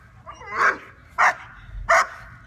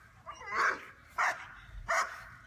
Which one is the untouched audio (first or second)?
first